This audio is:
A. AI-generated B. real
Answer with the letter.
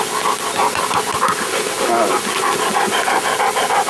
B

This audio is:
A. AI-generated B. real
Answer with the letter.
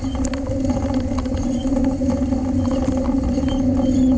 B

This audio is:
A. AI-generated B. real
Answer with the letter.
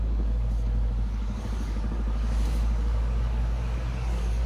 A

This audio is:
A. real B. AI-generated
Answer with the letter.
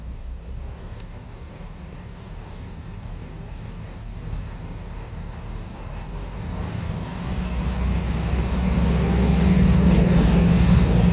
B